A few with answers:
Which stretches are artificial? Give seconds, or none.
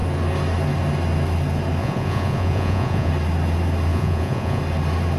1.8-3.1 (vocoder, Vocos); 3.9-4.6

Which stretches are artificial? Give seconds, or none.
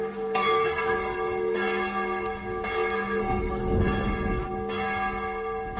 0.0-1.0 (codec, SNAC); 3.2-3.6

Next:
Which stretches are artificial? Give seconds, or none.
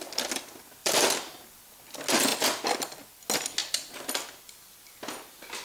0.8-1.6 (vocoder, BigVGAN v2); 2.3-3.1; 3.6-4.5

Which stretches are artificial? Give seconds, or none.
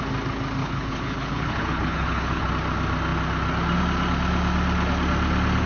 0.6-2.5 (codec, HILCodec)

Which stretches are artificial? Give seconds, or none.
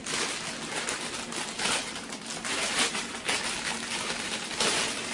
none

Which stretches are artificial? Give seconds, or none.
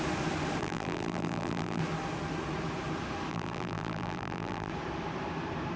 0.6-1.8 (vocoder, BigVGAN v2); 3.3-4.7